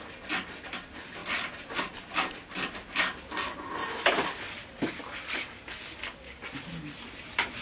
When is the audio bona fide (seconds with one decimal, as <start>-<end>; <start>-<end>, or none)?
0.0-7.6